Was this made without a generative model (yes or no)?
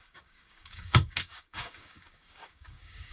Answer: no